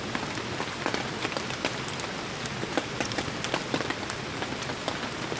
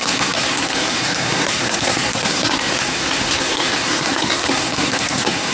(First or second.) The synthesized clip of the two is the second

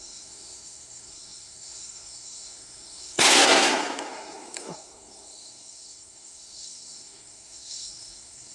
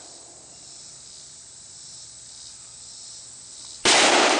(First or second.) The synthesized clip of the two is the first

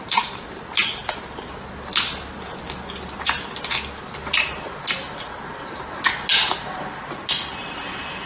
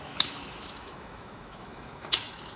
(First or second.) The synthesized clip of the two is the second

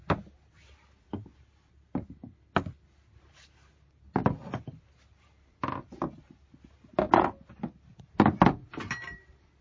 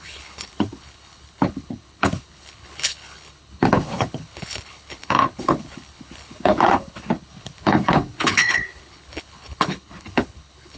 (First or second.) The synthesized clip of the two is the second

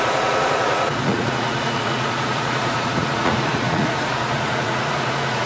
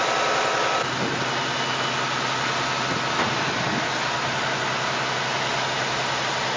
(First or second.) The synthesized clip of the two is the first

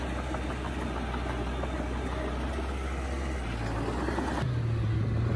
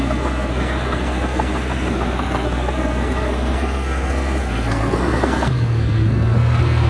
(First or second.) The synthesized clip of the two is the second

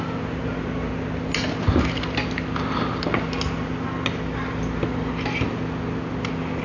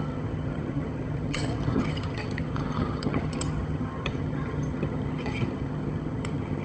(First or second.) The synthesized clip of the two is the second